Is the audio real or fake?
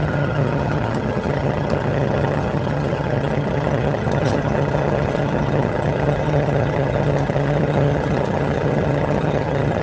fake